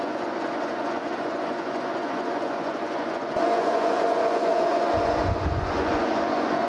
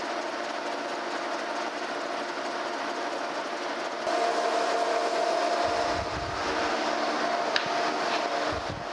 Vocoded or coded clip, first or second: first